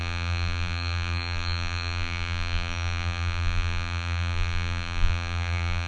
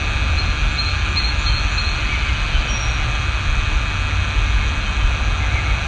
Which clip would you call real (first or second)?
second